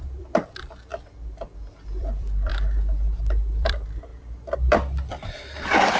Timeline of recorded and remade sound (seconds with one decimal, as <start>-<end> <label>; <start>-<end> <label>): 0.0-0.9 remade; 0.9-1.7 recorded; 1.7-2.5 remade; 2.5-3.2 recorded; 3.2-4.1 remade; 4.1-4.7 recorded; 4.7-6.0 remade